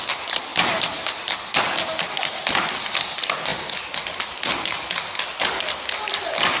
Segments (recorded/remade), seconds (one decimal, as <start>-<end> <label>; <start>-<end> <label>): 0.0-6.6 recorded